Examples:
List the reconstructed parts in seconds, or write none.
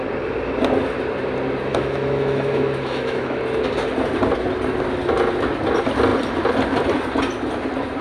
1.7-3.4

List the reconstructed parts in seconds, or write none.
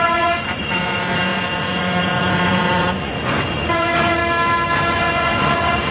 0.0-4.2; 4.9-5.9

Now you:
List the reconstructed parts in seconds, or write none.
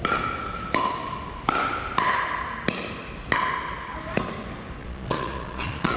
4.8-6.0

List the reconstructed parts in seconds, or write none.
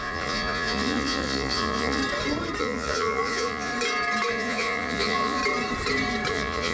0.0-2.0; 2.6-3.7; 4.3-5.4; 6.3-6.7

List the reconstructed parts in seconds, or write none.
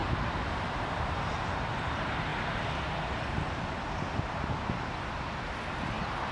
0.0-2.3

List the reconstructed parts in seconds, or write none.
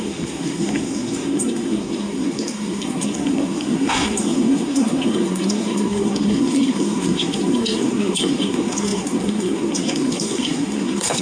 0.0-11.2